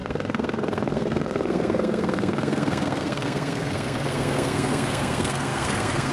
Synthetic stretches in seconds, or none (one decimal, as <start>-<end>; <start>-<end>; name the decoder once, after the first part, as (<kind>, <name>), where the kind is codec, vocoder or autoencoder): 0.0-6.1 (codec, SNAC)